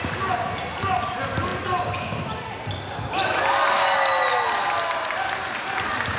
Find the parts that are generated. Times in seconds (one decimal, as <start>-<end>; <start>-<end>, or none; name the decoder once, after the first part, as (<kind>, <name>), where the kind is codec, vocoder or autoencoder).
none